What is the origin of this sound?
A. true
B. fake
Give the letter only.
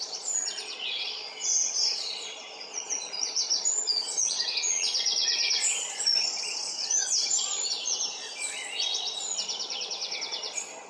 B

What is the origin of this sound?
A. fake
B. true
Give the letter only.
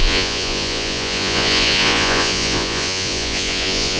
A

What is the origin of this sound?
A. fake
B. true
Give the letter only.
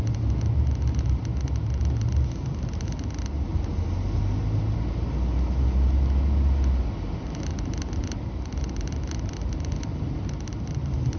B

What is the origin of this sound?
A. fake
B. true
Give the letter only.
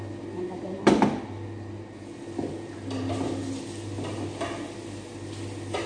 B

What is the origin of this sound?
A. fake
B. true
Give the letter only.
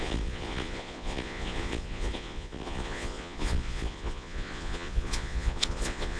A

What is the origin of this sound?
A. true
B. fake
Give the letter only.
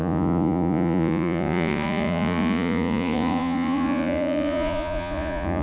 B